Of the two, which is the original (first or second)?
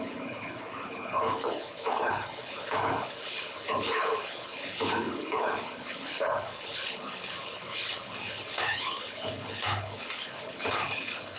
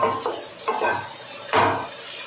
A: second